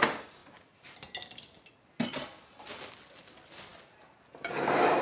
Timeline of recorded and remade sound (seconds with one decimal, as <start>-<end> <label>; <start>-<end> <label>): 0.0-5.0 recorded

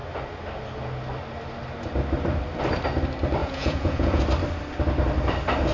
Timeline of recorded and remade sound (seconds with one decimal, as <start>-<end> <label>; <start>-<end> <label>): 0.0-3.4 recorded; 3.4-4.2 remade; 4.2-5.7 recorded

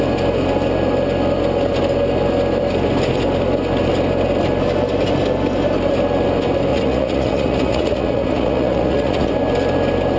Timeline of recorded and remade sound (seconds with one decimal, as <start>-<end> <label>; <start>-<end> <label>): 0.0-6.7 recorded; 6.7-9.3 remade; 9.3-10.2 recorded

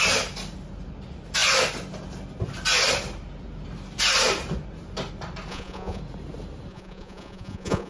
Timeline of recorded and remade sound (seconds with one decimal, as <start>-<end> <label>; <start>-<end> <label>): 0.0-5.5 recorded; 5.5-6.0 remade; 6.0-6.7 recorded; 6.7-7.9 remade

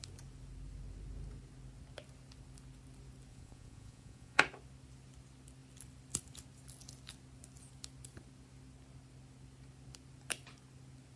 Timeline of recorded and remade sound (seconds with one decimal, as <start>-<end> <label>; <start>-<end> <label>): 0.0-3.3 recorded; 3.3-4.4 remade; 4.4-11.2 recorded